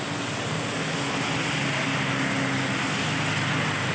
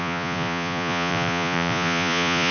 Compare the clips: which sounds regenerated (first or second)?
second